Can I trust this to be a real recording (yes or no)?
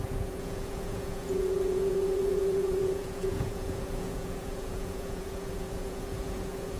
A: no